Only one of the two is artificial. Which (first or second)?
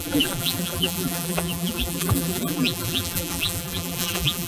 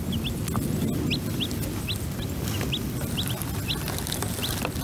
first